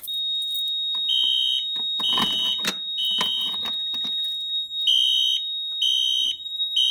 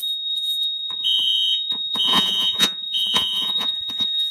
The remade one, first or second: second